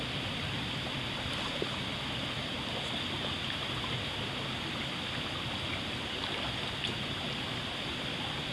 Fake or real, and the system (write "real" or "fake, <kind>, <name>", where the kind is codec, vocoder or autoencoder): real